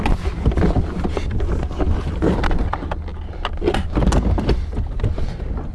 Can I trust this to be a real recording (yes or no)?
yes